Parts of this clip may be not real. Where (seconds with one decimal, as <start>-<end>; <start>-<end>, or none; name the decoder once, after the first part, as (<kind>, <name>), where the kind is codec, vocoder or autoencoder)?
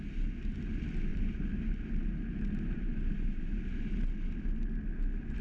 1.1-4.0 (vocoder, BigVGAN v2)